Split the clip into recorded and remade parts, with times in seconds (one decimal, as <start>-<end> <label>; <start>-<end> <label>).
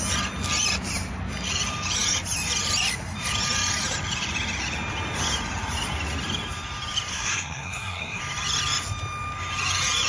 0.0-7.1 recorded; 7.1-8.2 remade; 8.2-10.1 recorded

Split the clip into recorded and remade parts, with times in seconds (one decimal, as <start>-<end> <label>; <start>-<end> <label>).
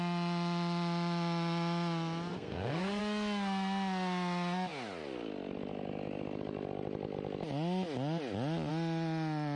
0.0-2.3 recorded; 2.3-3.0 remade; 3.0-9.6 recorded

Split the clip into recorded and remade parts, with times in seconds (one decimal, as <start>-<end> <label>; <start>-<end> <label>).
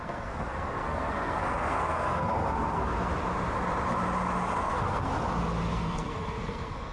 0.0-3.1 remade; 3.1-4.6 recorded; 4.6-5.1 remade; 5.1-5.7 recorded; 5.7-6.9 remade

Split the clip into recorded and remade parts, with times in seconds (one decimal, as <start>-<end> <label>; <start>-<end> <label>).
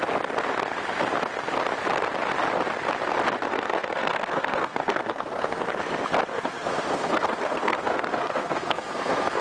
0.0-3.5 recorded; 3.5-5.6 remade; 5.6-6.3 recorded; 6.3-9.4 remade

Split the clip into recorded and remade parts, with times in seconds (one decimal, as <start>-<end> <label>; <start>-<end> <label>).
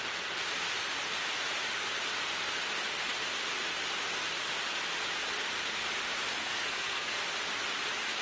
0.0-6.4 recorded; 6.4-7.2 remade; 7.2-8.2 recorded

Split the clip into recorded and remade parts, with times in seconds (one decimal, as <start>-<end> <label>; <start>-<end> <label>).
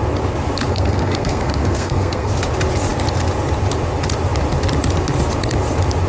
0.0-0.7 recorded; 0.7-2.3 remade; 2.3-6.1 recorded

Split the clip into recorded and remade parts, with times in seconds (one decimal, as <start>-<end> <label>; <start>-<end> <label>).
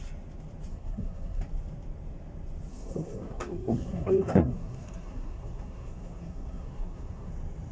0.0-0.7 recorded; 0.7-1.4 remade; 1.4-2.7 recorded; 2.7-7.3 remade; 7.3-7.7 recorded